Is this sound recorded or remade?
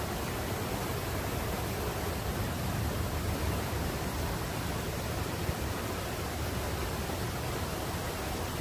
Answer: remade